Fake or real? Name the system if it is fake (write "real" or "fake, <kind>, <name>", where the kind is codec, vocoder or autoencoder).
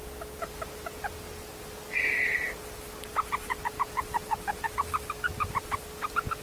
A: real